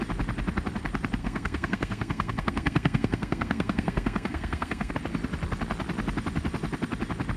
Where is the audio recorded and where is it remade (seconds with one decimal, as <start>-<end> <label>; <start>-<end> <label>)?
0.0-1.2 recorded; 1.2-4.9 remade; 4.9-7.4 recorded